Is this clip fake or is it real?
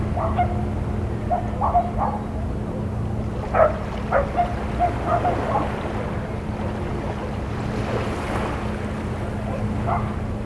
real